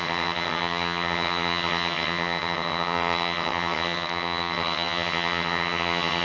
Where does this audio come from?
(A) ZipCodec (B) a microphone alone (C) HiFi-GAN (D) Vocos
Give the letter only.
C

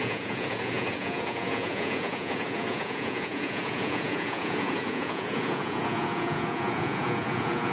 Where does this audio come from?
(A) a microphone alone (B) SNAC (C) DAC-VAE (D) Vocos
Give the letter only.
D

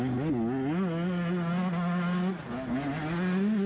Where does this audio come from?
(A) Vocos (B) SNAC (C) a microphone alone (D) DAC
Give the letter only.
C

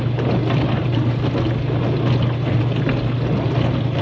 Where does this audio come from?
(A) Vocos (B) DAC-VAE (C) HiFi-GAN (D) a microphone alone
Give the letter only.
D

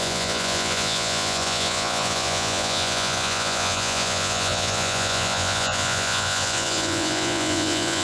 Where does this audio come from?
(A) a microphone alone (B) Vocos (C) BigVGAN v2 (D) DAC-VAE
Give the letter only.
B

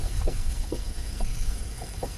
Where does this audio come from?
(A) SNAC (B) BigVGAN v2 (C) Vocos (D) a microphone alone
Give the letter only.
A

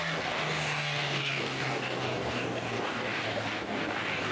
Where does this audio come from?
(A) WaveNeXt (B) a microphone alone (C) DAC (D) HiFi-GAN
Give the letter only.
C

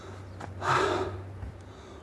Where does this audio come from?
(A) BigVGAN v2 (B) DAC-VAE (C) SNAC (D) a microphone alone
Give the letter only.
D